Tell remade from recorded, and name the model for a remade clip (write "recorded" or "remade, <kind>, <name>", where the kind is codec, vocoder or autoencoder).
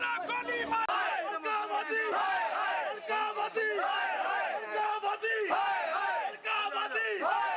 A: recorded